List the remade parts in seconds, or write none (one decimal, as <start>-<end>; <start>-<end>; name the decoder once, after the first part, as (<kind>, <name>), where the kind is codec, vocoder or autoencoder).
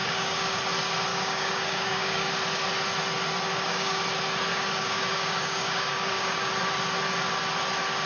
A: 0.0-0.6 (codec, DAC); 1.1-2.3; 3.5-4.0; 4.5-6.5